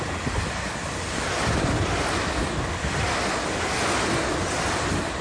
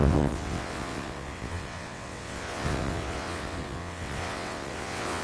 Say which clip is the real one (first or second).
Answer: first